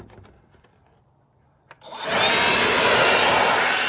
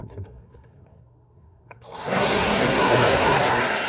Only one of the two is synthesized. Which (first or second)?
second